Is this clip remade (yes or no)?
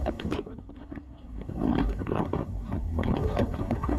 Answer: yes